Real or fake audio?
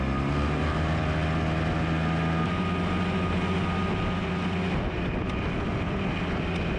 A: real